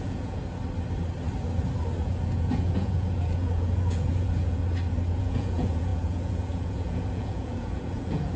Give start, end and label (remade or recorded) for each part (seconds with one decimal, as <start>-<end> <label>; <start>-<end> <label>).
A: 0.0-0.4 remade; 0.4-2.0 recorded; 2.0-4.6 remade; 4.6-5.2 recorded; 5.2-8.4 remade

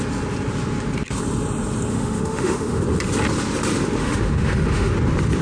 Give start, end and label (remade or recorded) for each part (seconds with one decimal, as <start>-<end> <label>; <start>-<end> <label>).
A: 0.0-1.9 recorded; 1.9-2.8 remade; 2.8-4.0 recorded; 4.0-4.9 remade; 4.9-5.4 recorded

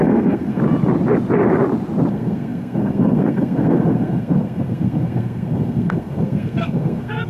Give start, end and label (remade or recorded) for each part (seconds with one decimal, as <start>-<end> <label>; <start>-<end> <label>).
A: 0.0-0.6 remade; 0.6-2.1 recorded; 2.1-7.3 remade